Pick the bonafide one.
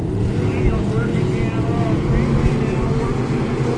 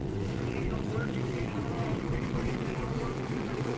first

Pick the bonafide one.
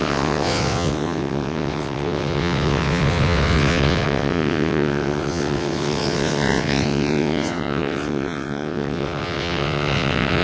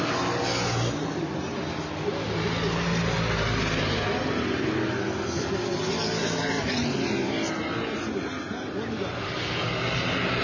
second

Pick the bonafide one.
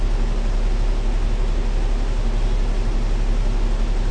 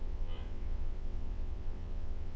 first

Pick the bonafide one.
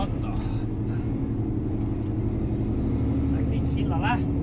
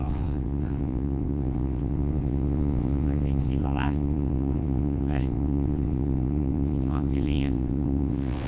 first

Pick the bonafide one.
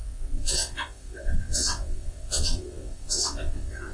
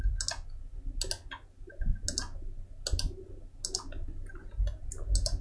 second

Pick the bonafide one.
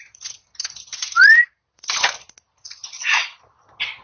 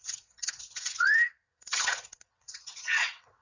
first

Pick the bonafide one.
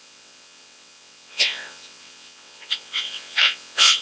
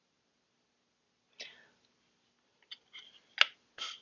second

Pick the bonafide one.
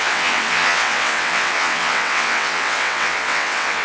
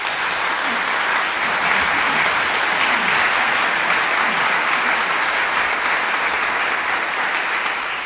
second